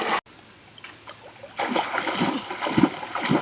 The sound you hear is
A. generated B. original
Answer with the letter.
B